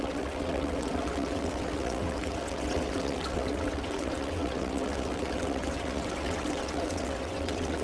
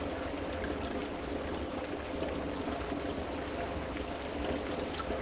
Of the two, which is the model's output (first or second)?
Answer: first